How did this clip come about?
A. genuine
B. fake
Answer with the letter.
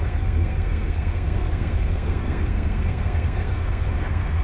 B